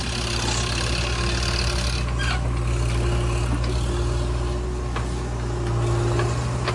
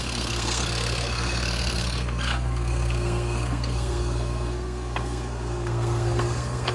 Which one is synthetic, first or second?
second